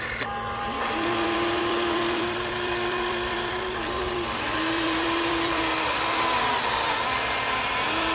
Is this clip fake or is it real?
fake